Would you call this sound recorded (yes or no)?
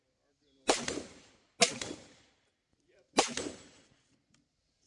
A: yes